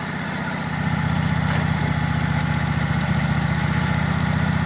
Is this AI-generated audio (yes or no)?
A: no